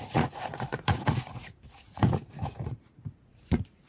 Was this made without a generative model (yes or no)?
no